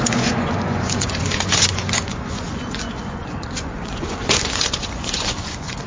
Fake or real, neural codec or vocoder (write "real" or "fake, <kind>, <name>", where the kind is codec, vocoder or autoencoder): fake, vocoder, Vocos